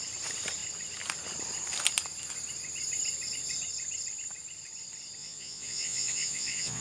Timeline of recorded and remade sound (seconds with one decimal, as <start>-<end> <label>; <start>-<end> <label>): 0.0-5.2 recorded; 5.2-6.8 remade